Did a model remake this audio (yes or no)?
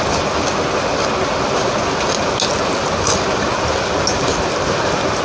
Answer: no